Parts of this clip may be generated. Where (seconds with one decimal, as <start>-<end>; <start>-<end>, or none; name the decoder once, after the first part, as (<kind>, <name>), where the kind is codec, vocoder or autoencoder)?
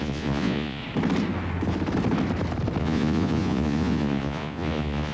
0.0-0.8 (vocoder, Vocos); 2.8-5.1